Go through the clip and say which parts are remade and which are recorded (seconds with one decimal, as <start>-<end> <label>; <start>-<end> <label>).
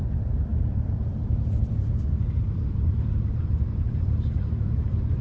0.0-0.5 remade; 0.5-1.6 recorded; 1.6-5.2 remade